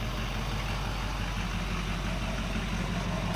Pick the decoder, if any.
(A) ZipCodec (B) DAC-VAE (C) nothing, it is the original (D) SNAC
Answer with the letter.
C